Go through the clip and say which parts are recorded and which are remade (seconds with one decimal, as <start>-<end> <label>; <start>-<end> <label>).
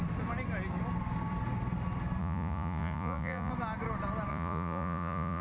0.0-2.2 recorded; 2.2-3.5 remade; 3.5-4.3 recorded; 4.3-5.4 remade